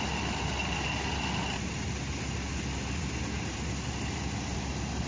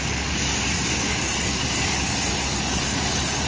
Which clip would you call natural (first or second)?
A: first